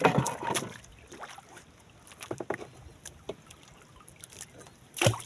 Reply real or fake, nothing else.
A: real